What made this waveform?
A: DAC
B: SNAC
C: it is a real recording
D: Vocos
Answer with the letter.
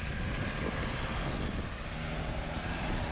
C